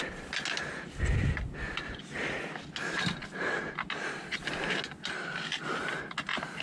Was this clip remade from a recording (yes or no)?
no